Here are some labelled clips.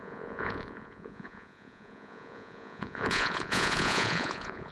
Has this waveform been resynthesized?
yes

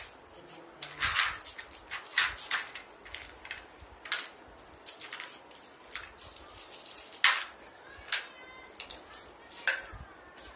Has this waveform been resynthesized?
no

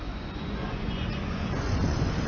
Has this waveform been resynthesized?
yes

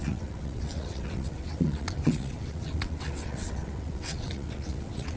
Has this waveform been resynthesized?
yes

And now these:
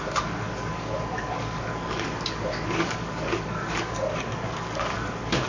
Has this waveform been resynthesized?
yes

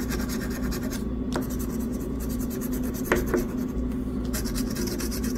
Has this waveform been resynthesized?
no